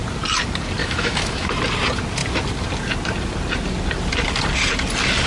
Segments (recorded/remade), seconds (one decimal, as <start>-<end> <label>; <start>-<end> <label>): 0.0-0.8 recorded; 0.8-1.5 remade; 1.5-5.3 recorded